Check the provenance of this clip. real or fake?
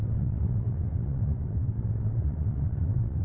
fake